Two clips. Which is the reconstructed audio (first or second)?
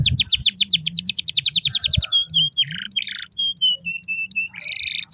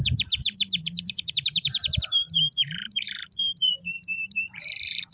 second